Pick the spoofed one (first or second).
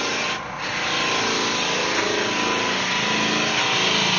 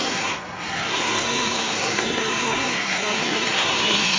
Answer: second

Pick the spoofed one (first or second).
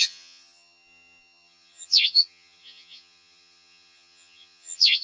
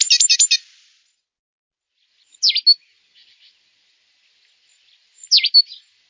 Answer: first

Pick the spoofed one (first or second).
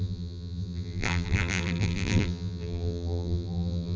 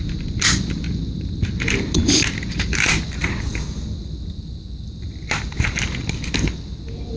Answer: first